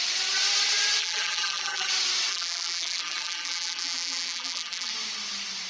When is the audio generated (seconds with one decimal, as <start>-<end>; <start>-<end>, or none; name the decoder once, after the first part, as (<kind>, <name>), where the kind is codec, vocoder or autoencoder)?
1.0-1.9 (vocoder, BigVGAN v2); 2.3-4.9

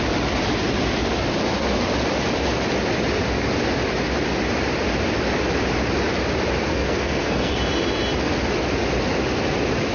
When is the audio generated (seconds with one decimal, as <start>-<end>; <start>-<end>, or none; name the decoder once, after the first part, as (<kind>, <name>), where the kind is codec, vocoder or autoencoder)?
6.7-7.6 (codec, SNAC)

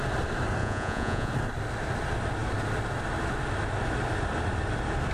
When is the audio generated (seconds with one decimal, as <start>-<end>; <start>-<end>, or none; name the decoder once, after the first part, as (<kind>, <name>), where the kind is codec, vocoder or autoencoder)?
0.6-1.3 (vocoder, Vocos)

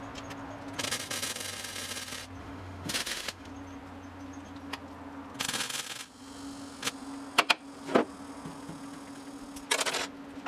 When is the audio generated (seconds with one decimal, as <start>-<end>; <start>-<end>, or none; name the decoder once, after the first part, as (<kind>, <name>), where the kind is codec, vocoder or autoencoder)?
2.4-3.5 (autoencoder, DAC-VAE)

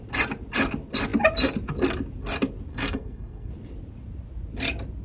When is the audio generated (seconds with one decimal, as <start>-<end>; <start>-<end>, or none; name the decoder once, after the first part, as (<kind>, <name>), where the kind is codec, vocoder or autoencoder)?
2.7-3.5 (codec, SNAC)

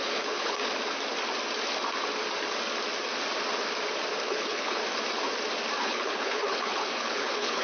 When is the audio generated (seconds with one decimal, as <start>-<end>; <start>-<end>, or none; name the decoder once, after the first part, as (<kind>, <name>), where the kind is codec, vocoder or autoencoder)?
0.0-0.6 (codec, HILCodec); 4.2-4.8; 5.8-7.6